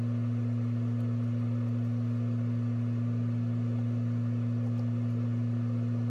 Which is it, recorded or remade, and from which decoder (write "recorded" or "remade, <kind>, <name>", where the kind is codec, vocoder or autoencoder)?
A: recorded